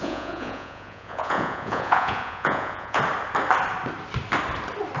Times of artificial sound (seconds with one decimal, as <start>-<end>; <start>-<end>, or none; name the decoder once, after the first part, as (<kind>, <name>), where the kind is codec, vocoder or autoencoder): 0.0-3.0 (vocoder, Vocos)